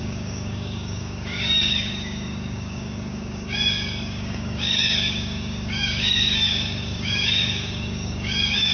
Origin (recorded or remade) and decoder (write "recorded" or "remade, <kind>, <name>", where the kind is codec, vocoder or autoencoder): remade, codec, DAC